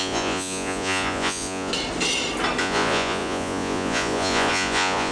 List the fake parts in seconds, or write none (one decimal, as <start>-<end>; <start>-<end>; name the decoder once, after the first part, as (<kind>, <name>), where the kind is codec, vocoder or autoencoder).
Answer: 0.0-1.7 (vocoder, Vocos); 2.6-5.1